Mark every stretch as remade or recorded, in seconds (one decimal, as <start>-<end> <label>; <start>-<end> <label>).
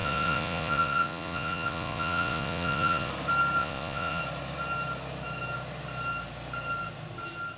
0.0-3.1 remade; 3.1-3.6 recorded; 3.6-4.2 remade; 4.2-7.6 recorded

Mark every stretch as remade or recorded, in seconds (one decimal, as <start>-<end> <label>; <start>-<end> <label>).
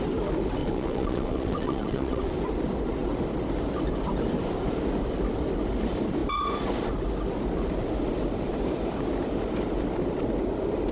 0.0-0.6 recorded; 0.6-2.3 remade; 2.3-10.9 recorded